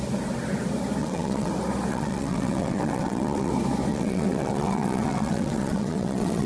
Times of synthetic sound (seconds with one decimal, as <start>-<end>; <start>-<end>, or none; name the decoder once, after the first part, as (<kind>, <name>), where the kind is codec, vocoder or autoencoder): 1.0-1.5 (vocoder, WaveNeXt); 1.9-3.5; 3.9-6.5